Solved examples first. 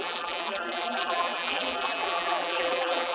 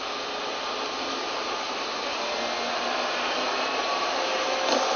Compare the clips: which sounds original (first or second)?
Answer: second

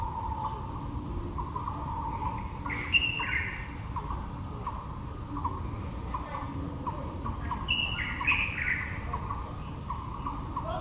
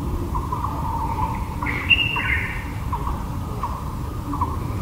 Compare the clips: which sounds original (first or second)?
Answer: first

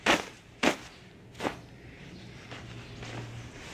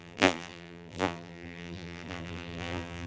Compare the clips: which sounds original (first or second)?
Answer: first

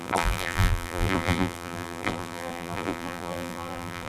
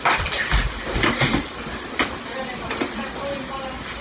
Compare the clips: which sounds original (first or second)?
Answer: second